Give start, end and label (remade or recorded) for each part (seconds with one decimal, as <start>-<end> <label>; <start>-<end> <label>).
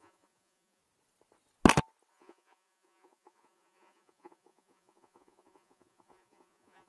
0.0-0.8 remade; 0.8-2.1 recorded; 2.1-6.9 remade